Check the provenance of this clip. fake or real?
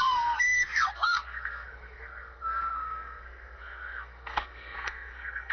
fake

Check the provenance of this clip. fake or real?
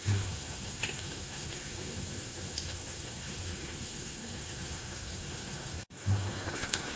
fake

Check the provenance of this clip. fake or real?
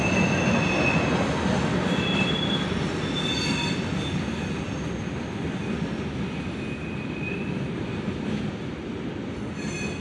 real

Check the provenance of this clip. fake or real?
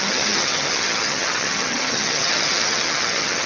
fake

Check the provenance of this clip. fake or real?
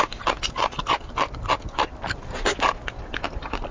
real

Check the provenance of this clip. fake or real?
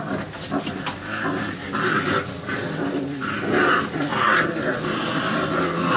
real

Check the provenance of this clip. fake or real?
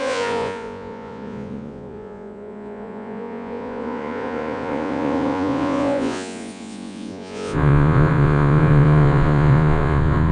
fake